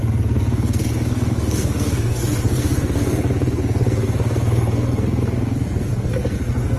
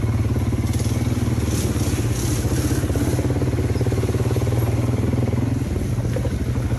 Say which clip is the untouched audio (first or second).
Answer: second